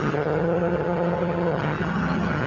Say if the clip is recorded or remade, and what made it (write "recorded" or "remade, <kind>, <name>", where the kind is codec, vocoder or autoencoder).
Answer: remade, vocoder, HiFi-GAN